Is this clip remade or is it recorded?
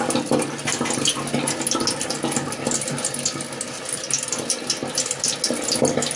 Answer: recorded